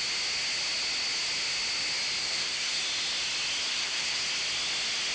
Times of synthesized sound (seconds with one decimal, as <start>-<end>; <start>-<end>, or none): 2.2-2.8; 3.7-4.2